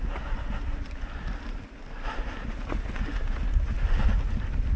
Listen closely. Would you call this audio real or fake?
real